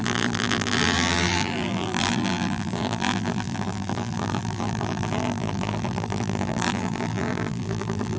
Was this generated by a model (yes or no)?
yes